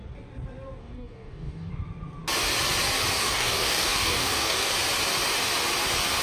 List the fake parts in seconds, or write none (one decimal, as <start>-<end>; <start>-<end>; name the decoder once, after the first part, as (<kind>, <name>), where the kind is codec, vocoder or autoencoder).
0.8-1.7 (codec, DAC); 3.2-4.7